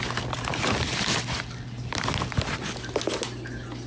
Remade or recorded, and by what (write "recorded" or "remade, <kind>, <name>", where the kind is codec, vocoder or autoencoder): recorded